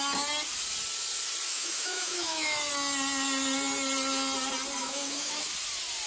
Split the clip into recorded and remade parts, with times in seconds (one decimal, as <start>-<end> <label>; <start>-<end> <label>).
0.0-1.5 recorded; 1.5-2.7 remade; 2.7-4.8 recorded; 4.8-5.5 remade; 5.5-6.1 recorded